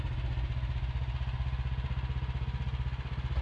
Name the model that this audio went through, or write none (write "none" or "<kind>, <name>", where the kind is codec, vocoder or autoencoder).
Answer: none